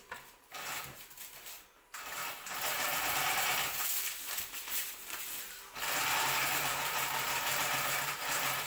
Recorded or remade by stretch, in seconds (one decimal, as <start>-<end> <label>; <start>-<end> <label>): 0.0-4.0 remade; 4.0-6.4 recorded; 6.4-8.7 remade